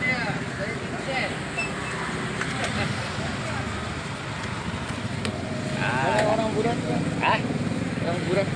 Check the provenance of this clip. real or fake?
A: real